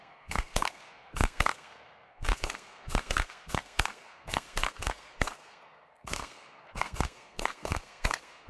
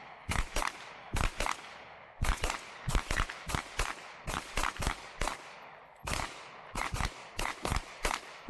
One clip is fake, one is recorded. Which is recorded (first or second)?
second